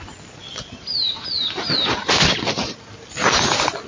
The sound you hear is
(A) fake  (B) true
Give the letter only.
B